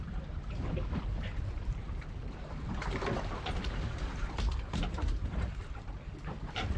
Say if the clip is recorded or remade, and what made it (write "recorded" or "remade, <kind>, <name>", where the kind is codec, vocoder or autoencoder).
remade, vocoder, BigVGAN v2